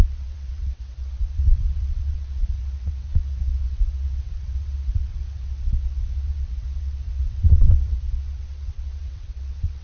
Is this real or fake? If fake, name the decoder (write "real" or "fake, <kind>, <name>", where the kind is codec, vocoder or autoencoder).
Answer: fake, vocoder, WaveNeXt